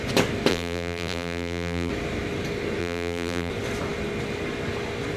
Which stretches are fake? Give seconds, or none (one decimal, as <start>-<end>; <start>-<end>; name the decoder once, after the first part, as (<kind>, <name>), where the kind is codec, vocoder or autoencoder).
0.5-1.9 (vocoder, BigVGAN v2); 2.8-3.5